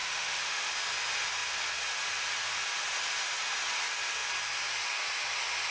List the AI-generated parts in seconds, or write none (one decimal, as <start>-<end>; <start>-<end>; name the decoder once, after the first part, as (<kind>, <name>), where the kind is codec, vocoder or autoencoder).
0.0-0.7 (autoencoder, DAC-VAE)